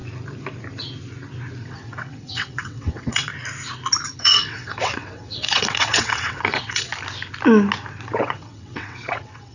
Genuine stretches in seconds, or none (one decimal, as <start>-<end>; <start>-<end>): 0.0-1.6; 3.3-4.2; 6.9-8.2